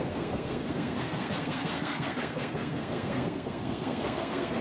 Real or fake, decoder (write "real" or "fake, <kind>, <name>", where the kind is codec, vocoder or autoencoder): fake, codec, SNAC